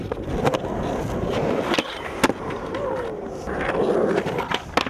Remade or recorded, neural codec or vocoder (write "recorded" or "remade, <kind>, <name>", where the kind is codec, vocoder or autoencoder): recorded